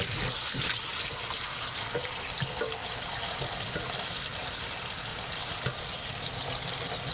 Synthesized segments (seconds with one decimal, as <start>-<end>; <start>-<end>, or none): 5.1-6.1